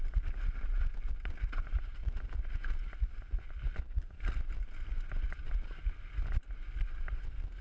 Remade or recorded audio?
recorded